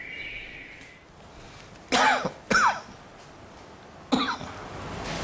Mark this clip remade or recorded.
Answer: recorded